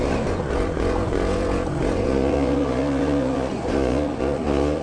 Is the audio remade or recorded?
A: remade